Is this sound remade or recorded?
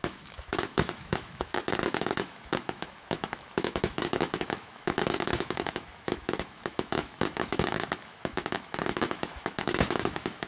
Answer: remade